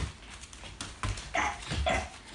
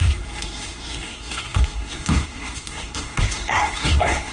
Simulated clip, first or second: second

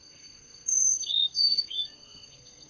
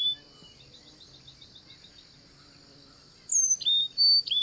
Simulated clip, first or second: first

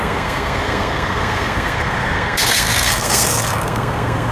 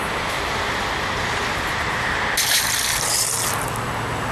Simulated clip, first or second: first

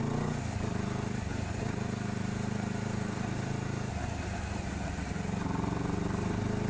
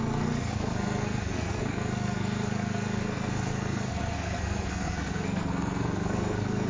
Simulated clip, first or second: second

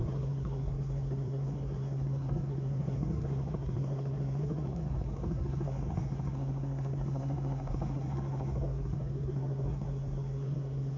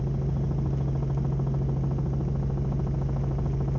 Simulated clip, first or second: first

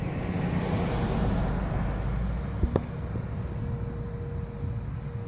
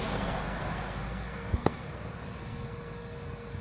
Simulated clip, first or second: second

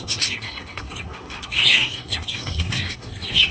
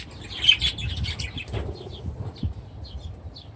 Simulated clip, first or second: first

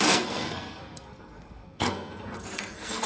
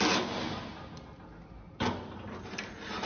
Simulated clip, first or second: first